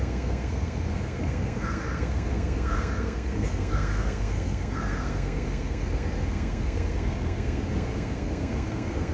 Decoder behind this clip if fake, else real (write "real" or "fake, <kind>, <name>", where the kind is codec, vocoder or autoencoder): fake, codec, SNAC